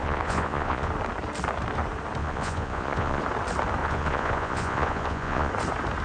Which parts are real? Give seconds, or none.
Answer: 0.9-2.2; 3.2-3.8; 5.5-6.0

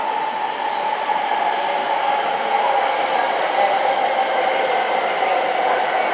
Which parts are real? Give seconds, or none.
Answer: 0.0-1.8; 2.8-6.1

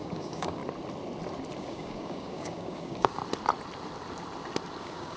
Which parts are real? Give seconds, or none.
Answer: 0.6-1.6; 3.2-4.8

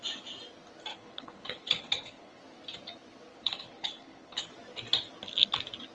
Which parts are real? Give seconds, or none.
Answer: 0.0-0.9; 2.4-3.3; 4.5-5.9